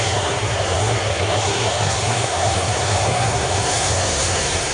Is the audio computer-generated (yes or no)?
yes